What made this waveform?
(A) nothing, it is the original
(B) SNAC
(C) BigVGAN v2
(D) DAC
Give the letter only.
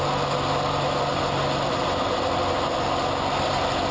A